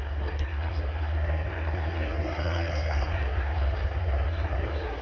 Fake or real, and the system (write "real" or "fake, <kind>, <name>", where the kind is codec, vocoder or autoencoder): fake, codec, SNAC